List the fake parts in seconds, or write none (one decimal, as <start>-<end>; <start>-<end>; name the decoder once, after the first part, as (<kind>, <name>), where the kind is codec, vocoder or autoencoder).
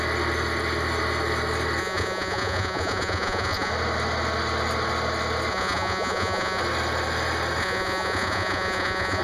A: 1.8-3.7 (vocoder, Vocos); 5.5-6.6; 7.6-9.2